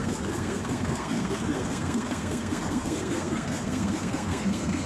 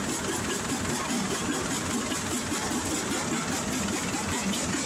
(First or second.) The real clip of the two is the second